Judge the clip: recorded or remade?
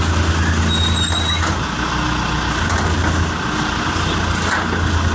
recorded